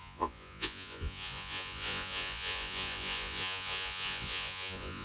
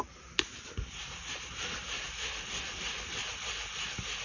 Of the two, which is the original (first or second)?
second